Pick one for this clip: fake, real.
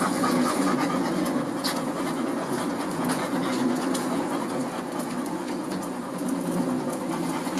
fake